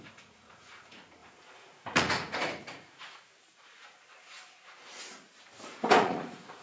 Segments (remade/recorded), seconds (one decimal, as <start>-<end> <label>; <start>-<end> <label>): 0.0-3.3 remade; 3.3-6.0 recorded; 6.0-6.6 remade